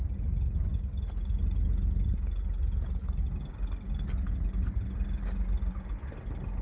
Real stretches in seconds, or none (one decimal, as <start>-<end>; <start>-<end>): 0.0-6.6